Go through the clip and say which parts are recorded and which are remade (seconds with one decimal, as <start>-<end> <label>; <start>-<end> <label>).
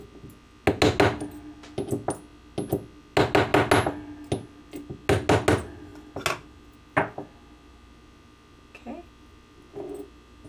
0.0-10.5 recorded